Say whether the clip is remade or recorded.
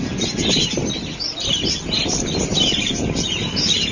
recorded